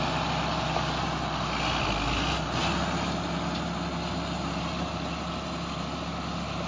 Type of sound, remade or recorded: recorded